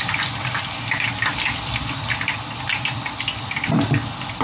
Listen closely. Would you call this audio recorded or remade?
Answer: recorded